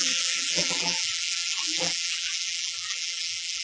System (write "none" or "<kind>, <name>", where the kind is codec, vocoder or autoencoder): vocoder, BigVGAN v2